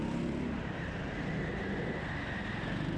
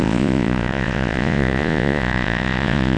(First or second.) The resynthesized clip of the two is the second